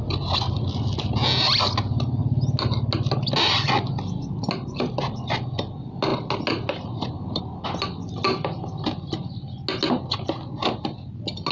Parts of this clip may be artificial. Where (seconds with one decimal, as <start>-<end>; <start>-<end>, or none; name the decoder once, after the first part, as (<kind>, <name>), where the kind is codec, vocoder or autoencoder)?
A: none